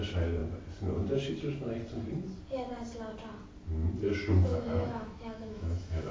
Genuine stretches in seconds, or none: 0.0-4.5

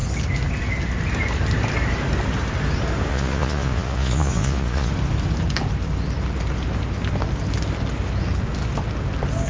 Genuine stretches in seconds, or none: 0.0-3.1; 4.9-9.5

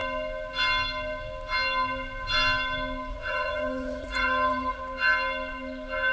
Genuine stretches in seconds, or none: 0.0-3.1; 4.8-6.1

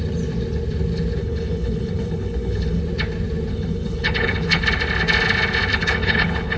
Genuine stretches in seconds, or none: 0.0-1.2; 2.8-3.5; 4.6-5.7

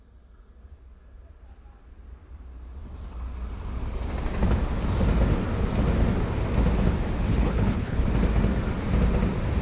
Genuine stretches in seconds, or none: 0.0-7.3; 8.0-9.6

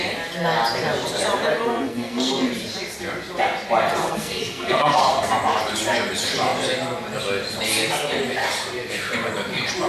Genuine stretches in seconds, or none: 0.0-1.7; 2.5-4.0; 5.3-9.9

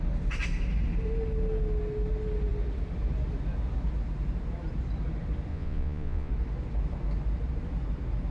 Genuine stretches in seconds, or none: 0.0-5.5; 6.3-8.3

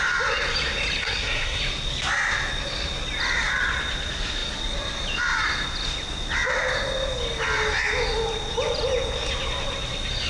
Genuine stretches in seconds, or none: 0.0-1.0; 1.6-10.3